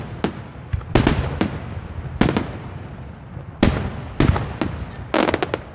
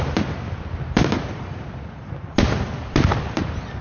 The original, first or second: first